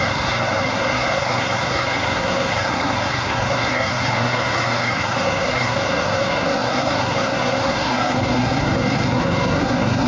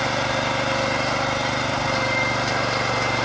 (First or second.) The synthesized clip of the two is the first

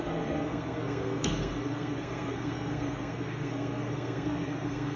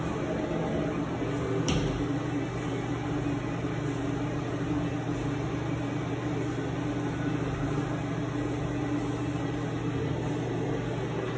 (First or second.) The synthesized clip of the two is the first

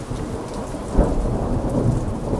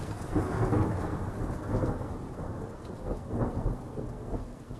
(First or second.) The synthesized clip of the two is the second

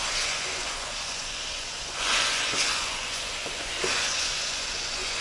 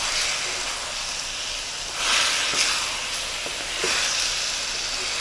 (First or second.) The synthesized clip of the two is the first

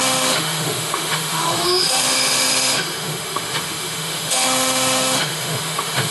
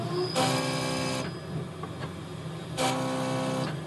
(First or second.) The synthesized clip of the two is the first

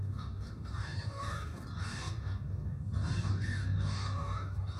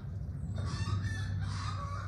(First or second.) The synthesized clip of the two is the first